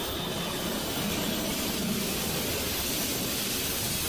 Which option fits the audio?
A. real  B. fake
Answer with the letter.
A